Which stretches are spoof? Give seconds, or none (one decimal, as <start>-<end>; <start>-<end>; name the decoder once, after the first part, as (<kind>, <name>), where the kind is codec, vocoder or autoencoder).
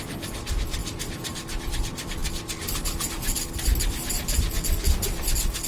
none